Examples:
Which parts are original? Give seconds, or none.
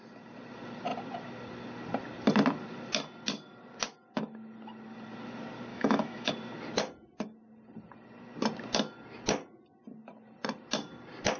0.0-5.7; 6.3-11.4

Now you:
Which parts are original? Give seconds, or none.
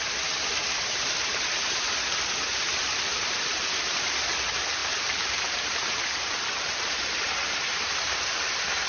0.0-3.1; 4.3-4.8; 8.2-8.9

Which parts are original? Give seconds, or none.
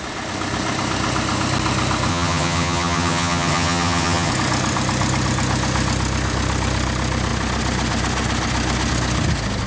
0.0-2.1; 4.3-9.7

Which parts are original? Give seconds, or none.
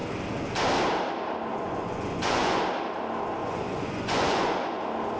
0.0-1.5; 2.6-3.4; 4.8-5.2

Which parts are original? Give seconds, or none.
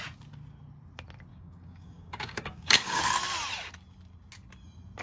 0.0-1.3; 3.0-5.0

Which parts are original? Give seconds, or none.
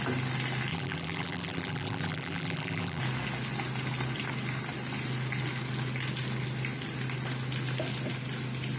0.0-0.7; 3.0-8.8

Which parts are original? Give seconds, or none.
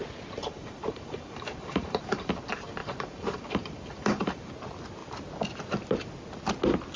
0.0-0.4; 2.3-2.8; 4.5-7.0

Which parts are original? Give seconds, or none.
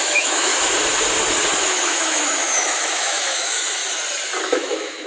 0.5-1.6; 3.8-4.4